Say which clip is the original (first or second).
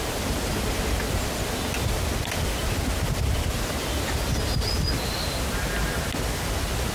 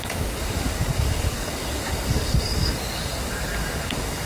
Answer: first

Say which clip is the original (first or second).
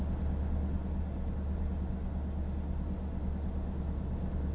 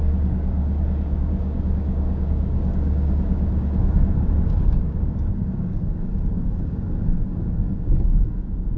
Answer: first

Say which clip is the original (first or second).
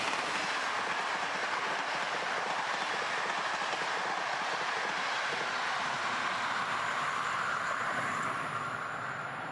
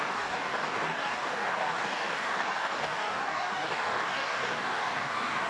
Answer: first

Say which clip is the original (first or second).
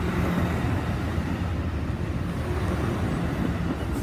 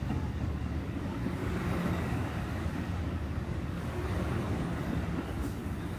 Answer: first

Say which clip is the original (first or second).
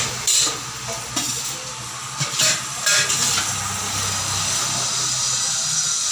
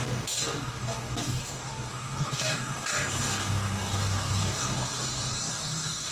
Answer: first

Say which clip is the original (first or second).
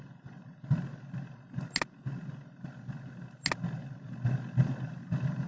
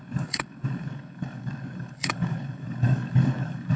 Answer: first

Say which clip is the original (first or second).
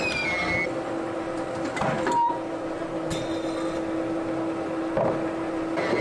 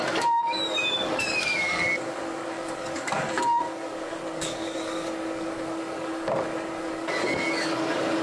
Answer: first